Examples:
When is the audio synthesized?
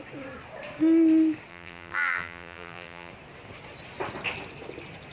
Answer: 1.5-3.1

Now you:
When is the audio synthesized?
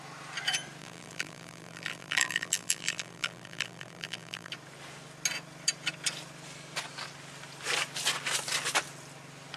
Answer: 0.8-4.5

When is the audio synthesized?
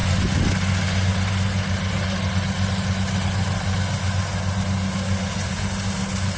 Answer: none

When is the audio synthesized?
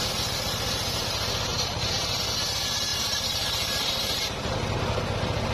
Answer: 1.5-2.1; 2.9-4.5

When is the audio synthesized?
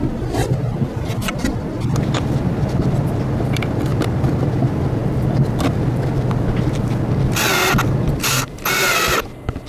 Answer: 0.0-5.0; 7.8-9.7